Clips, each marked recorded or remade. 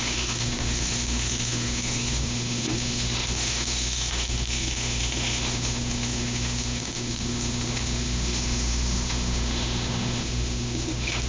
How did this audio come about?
remade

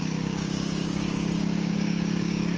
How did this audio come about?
remade